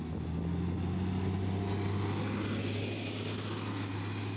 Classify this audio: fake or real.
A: real